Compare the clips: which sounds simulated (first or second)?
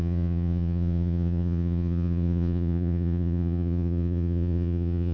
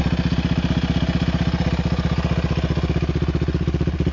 first